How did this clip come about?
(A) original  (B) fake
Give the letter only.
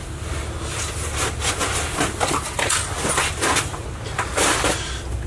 A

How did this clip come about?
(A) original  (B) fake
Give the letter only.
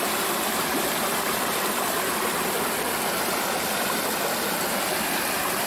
B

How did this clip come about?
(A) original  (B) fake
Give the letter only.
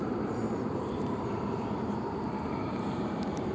B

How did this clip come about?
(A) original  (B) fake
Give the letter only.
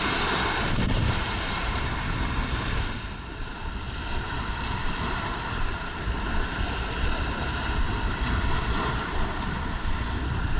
B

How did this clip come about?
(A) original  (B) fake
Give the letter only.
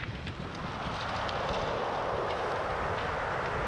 A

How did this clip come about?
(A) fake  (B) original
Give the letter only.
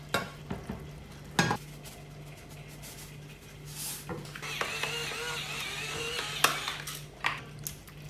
B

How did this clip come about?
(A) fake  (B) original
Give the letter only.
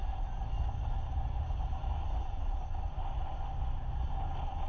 B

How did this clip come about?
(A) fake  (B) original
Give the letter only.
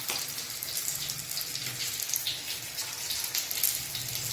B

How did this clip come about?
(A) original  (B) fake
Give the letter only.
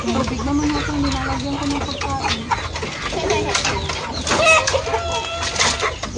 A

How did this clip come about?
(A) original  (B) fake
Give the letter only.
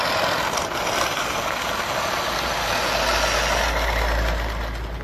A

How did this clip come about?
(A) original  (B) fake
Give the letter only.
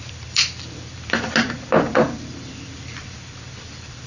B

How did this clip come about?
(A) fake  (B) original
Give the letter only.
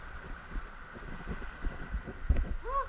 B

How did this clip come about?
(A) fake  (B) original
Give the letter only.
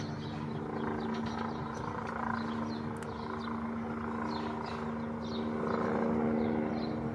B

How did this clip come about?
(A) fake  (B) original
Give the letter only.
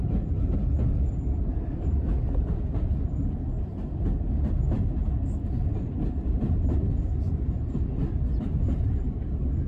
B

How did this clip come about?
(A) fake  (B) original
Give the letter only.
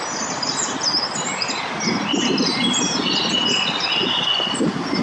B